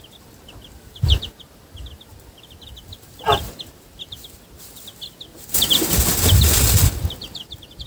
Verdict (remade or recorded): recorded